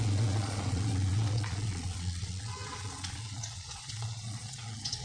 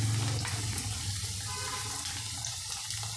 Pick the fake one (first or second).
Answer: first